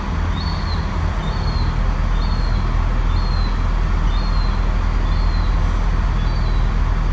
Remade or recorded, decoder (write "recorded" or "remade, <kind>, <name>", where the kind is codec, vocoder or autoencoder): recorded